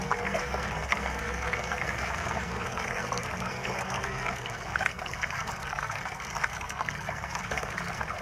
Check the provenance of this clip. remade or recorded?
remade